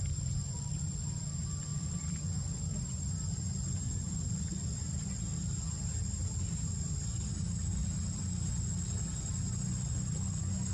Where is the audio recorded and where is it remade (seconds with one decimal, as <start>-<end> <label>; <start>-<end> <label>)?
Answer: 0.0-10.7 recorded